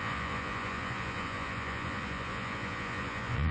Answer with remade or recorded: remade